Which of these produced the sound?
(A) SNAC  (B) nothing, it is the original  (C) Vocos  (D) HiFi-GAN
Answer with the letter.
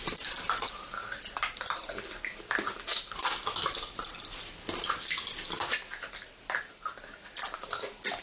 B